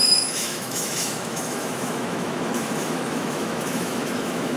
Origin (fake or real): fake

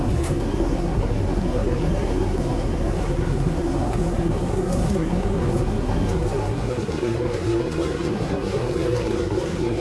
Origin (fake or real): fake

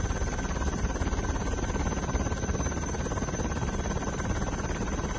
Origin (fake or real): real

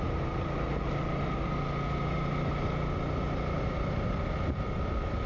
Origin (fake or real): real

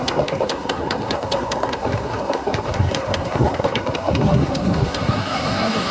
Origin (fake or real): fake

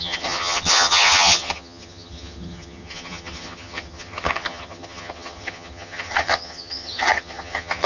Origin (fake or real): fake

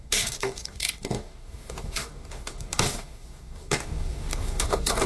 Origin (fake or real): fake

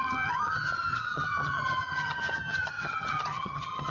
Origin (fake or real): fake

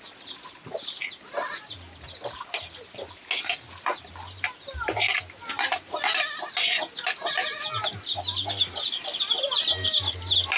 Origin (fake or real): real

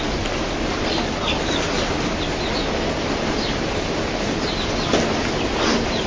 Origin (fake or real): real